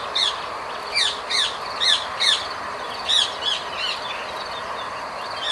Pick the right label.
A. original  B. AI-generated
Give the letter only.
A